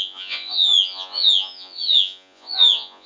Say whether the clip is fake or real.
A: fake